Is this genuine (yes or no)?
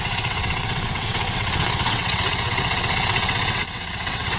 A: no